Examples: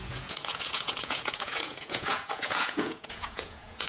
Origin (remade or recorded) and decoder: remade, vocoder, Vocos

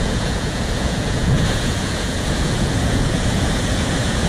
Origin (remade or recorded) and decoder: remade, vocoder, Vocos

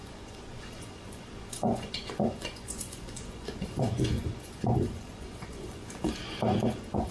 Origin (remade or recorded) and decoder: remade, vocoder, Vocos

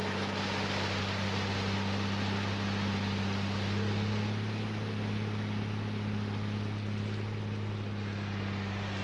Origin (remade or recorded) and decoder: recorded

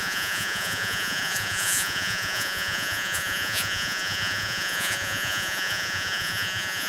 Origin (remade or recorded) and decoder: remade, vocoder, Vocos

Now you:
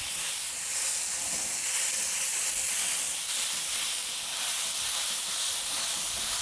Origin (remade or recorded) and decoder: recorded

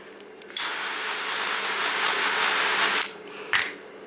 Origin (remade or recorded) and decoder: recorded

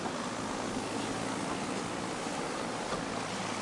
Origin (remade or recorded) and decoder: recorded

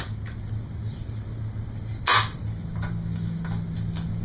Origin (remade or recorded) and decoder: recorded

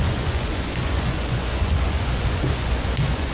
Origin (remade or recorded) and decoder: remade, vocoder, Vocos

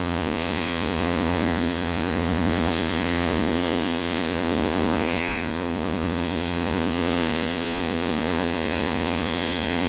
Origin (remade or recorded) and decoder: remade, vocoder, Vocos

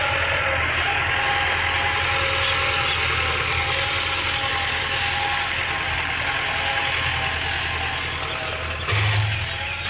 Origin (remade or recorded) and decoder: recorded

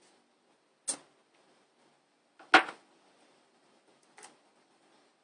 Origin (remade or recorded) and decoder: recorded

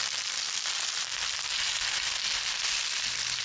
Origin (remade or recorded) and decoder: recorded